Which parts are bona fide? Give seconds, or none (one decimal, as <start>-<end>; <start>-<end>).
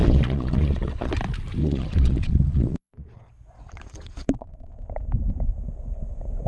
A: 1.1-1.6; 4.7-6.5